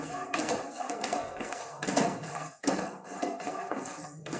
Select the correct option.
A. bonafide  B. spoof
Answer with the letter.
B